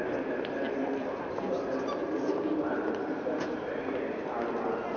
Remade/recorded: recorded